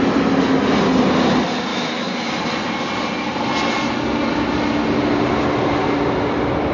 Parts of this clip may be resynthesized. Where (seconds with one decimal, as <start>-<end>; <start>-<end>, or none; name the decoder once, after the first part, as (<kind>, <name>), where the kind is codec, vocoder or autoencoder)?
1.7-2.3 (autoencoder, DAC-VAE)